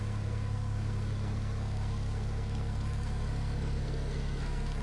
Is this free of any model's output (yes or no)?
no